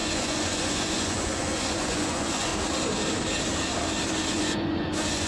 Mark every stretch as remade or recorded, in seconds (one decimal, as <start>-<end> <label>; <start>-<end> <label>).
0.0-2.5 remade; 2.5-4.3 recorded; 4.3-5.3 remade